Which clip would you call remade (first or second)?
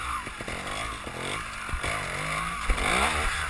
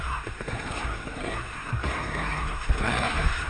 second